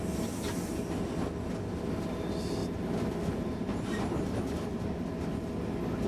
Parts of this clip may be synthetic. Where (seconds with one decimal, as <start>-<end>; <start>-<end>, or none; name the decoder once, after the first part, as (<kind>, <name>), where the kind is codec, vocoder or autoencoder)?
2.6-4.8 (vocoder, BigVGAN v2)